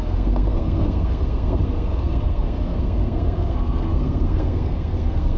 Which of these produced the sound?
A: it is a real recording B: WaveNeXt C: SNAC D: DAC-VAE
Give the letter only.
C